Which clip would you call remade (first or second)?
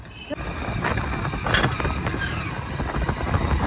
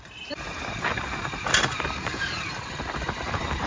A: second